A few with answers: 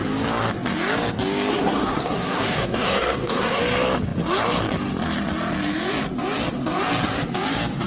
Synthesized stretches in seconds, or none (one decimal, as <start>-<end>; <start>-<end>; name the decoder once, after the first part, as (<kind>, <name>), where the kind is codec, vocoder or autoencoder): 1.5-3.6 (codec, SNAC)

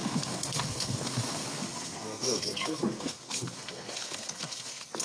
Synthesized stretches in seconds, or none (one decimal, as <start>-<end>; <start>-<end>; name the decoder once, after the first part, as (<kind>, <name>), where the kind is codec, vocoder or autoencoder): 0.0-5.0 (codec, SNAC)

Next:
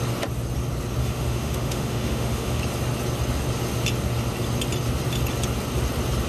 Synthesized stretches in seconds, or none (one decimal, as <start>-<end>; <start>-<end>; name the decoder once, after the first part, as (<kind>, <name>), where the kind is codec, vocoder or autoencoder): 1.0-2.6 (autoencoder, DAC-VAE)